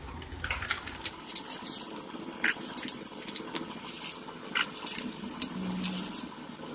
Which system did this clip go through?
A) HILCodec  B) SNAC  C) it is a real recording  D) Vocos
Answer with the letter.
C